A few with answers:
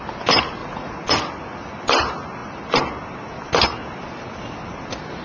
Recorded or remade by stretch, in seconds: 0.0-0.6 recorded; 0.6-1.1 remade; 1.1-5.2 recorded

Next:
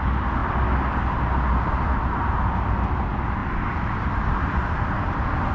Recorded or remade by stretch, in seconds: 0.0-0.4 recorded; 0.4-1.9 remade; 1.9-3.4 recorded; 3.4-5.5 remade

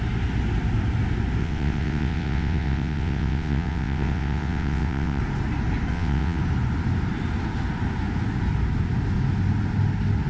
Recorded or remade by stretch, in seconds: 0.0-1.4 recorded; 1.4-5.2 remade; 5.2-5.9 recorded; 5.9-6.4 remade; 6.4-10.3 recorded

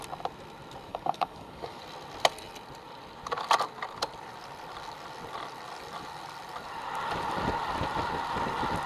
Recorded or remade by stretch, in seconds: 0.0-0.9 recorded; 0.9-1.8 remade; 1.8-8.9 recorded

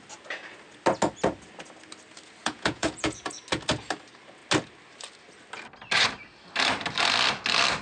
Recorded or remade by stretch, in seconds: 0.0-2.4 recorded; 2.4-3.3 remade; 3.3-7.8 recorded

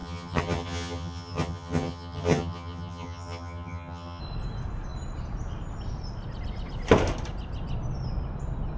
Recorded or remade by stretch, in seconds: 0.0-4.2 remade; 4.2-8.8 recorded

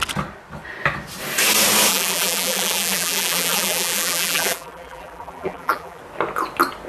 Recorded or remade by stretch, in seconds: 0.0-1.9 recorded; 1.9-6.0 remade; 6.0-6.9 recorded

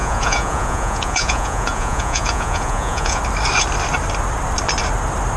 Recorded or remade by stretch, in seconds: 0.0-3.2 remade; 3.2-5.4 recorded